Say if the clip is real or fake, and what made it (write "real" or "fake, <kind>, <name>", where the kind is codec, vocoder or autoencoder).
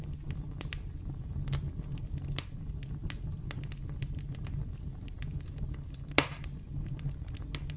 real